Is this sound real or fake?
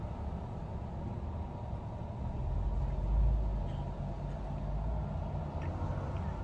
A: real